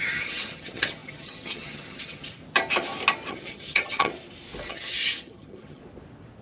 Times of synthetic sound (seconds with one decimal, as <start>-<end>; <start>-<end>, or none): 0.0-2.4; 3.3-4.1; 4.7-5.8